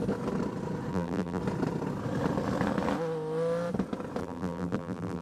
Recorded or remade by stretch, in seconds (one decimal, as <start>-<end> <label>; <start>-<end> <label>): 0.0-0.9 recorded; 0.9-1.4 remade; 1.4-4.2 recorded; 4.2-5.2 remade